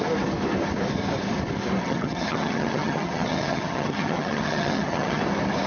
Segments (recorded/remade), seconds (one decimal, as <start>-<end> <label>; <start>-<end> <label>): 0.0-1.8 recorded; 1.8-5.2 remade; 5.2-5.7 recorded

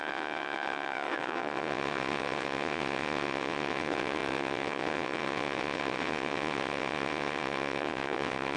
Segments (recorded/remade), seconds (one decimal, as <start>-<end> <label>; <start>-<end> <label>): 0.0-8.6 remade

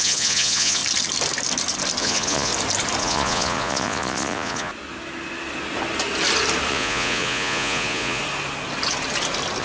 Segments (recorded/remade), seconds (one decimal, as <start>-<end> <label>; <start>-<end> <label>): 0.0-0.8 remade; 0.8-2.0 recorded; 2.0-2.5 remade; 2.5-3.0 recorded; 3.0-4.7 remade; 4.7-6.7 recorded; 6.7-8.2 remade; 8.2-9.6 recorded

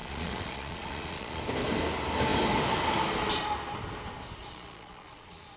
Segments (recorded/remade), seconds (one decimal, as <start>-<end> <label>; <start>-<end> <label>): 0.0-1.4 remade; 1.4-4.4 recorded; 4.4-5.6 remade

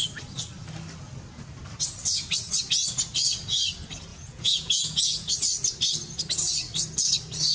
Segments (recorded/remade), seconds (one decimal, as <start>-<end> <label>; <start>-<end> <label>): 0.0-4.1 recorded; 4.1-5.3 remade; 5.3-7.5 recorded

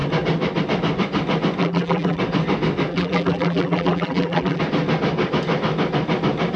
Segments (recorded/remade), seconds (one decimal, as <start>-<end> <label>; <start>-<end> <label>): 0.0-1.6 recorded; 1.6-2.2 remade; 2.2-2.9 recorded; 2.9-4.6 remade; 4.6-6.6 recorded

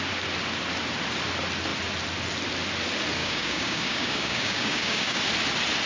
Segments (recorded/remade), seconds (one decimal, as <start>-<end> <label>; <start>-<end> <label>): 0.0-3.2 recorded; 3.2-5.2 remade; 5.2-5.9 recorded

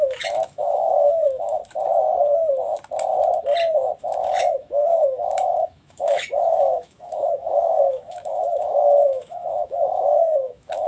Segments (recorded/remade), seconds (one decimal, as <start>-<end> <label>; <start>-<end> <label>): 0.0-1.6 remade; 1.6-4.0 recorded; 4.0-10.9 remade